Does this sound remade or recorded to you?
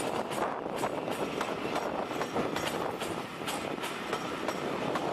recorded